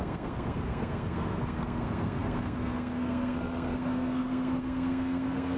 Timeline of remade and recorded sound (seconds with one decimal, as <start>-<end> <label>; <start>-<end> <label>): 0.0-5.6 remade